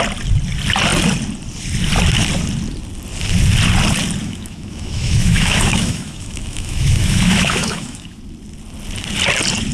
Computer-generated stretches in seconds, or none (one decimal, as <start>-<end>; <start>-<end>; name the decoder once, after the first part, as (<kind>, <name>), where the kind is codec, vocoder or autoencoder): 4.2-8.2 (autoencoder, DAC-VAE)